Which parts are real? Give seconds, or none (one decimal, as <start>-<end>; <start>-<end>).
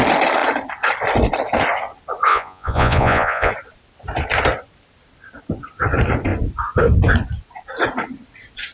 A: 0.0-2.3; 3.5-8.7